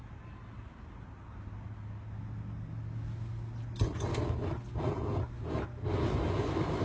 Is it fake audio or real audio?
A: real